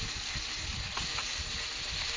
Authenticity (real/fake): fake